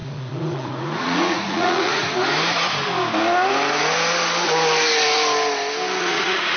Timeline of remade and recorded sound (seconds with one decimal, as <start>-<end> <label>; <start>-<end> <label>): 0.0-2.0 remade; 2.0-6.0 recorded; 6.0-6.6 remade